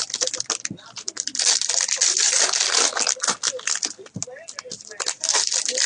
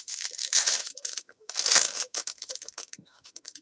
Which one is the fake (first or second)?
second